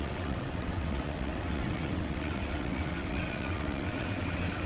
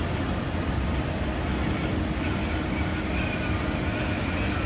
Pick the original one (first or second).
second